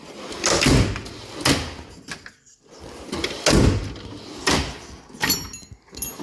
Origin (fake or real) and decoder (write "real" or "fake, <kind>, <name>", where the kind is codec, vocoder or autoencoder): real